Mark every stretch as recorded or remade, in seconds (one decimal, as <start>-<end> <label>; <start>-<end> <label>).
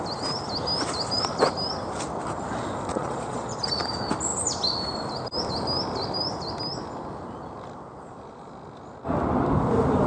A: 0.0-2.9 recorded; 2.9-3.6 remade; 3.6-10.1 recorded